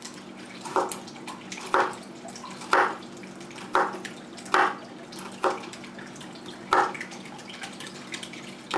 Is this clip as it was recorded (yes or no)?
yes